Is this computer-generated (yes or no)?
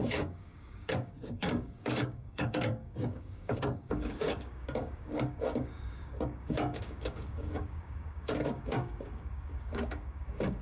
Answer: yes